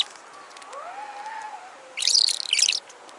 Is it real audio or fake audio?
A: real